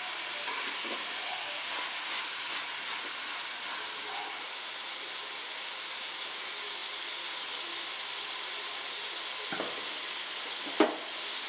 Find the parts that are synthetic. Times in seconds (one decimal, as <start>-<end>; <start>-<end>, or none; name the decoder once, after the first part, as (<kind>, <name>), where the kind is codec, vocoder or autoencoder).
none